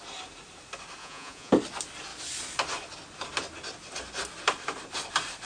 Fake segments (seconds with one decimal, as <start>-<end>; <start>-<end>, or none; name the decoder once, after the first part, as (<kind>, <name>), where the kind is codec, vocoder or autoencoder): 1.0-1.5 (vocoder, Vocos)

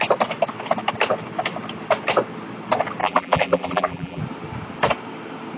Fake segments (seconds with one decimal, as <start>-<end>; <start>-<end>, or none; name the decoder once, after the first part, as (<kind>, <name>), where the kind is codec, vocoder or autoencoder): 3.0-4.2 (vocoder, BigVGAN v2)